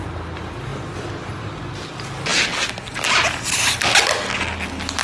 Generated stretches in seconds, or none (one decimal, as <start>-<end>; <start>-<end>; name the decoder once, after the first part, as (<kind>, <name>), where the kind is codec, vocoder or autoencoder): none